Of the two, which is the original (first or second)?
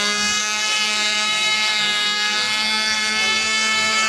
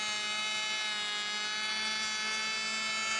second